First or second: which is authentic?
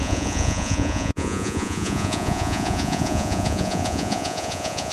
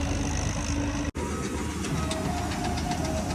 second